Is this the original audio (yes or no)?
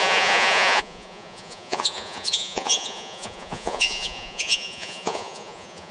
no